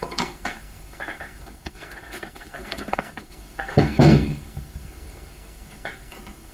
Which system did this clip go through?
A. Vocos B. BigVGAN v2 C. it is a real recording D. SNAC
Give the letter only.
D